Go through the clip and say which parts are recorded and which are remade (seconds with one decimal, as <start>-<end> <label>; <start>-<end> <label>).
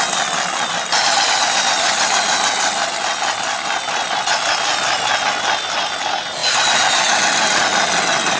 0.0-8.4 recorded